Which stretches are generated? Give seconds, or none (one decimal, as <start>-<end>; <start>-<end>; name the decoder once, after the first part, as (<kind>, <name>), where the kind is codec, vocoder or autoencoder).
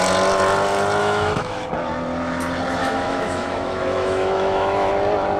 1.0-1.7 (autoencoder, DAC-VAE); 2.8-4.9